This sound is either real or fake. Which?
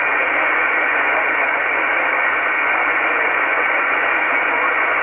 fake